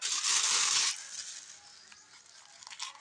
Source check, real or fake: real